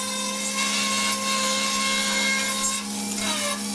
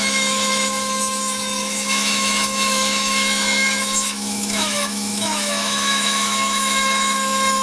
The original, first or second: first